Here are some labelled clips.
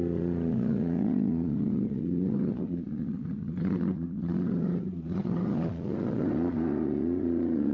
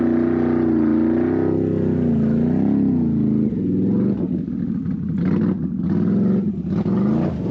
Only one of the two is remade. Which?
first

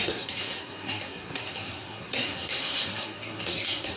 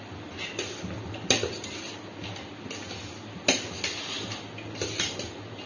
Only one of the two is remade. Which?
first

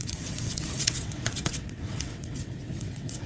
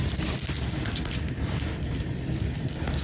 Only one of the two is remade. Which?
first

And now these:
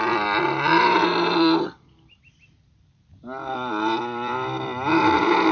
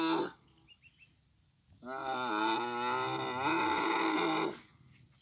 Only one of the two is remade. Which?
first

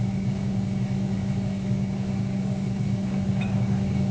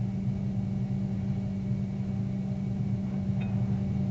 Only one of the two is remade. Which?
first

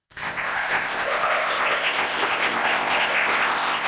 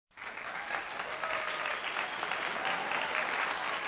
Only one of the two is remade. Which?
first